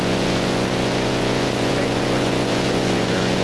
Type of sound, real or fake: fake